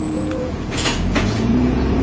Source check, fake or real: fake